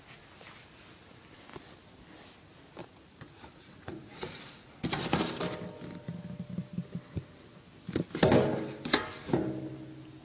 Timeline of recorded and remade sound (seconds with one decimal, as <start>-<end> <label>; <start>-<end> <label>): 0.0-2.8 recorded; 2.8-4.7 remade; 4.7-10.2 recorded